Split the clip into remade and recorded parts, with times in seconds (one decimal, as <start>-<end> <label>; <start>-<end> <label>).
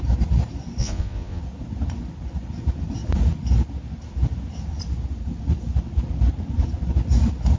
0.0-0.8 recorded; 0.8-1.4 remade; 1.4-7.6 recorded